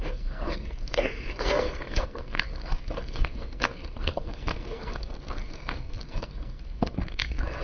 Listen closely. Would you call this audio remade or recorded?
remade